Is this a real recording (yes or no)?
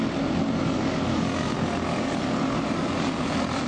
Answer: yes